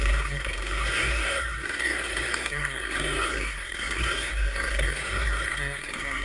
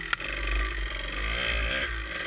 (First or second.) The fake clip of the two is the first